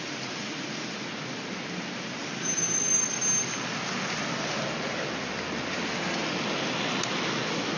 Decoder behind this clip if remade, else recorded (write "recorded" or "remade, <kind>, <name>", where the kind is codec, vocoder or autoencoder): recorded